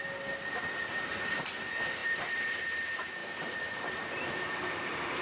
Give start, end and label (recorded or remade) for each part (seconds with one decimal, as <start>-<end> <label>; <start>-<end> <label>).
0.0-2.0 recorded; 2.0-2.6 remade; 2.6-3.2 recorded; 3.2-3.9 remade; 3.9-5.2 recorded